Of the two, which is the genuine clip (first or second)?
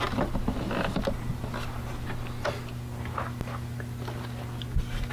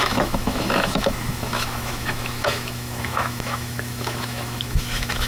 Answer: first